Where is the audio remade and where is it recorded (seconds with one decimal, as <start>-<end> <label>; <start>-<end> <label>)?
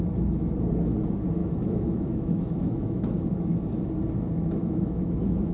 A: 0.0-1.4 recorded; 1.4-3.0 remade; 3.0-4.6 recorded; 4.6-5.5 remade